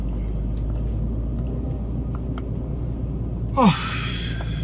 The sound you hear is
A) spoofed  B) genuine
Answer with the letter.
B